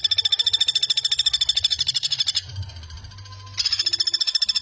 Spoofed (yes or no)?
no